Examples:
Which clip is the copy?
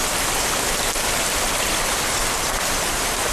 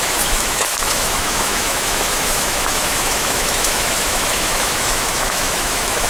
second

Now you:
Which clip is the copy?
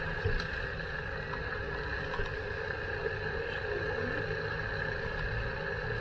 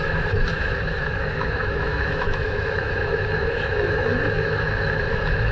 second